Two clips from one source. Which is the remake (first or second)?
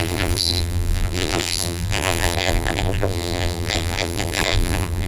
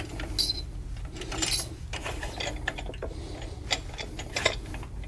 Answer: first